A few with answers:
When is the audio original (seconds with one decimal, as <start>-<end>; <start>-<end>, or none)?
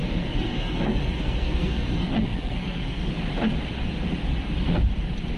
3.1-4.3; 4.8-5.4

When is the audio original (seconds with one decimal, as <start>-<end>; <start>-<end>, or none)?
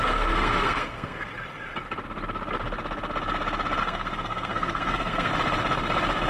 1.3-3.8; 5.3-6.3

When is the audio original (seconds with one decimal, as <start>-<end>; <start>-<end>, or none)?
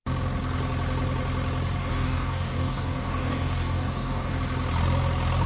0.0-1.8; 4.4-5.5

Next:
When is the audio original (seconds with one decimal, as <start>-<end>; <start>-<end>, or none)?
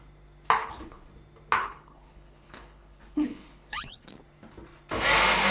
0.0-0.6; 1.1-1.6; 4.1-5.5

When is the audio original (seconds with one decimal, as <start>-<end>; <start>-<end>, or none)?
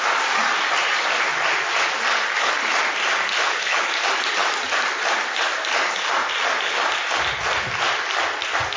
0.0-3.4; 3.9-8.8